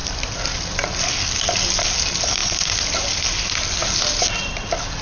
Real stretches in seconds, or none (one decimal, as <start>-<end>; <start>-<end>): 1.1-5.0